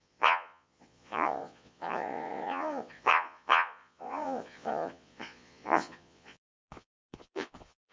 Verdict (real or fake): fake